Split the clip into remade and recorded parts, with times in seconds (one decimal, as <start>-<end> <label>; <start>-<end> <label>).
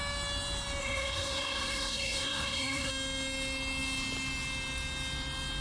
0.0-0.8 recorded; 0.8-2.9 remade; 2.9-5.6 recorded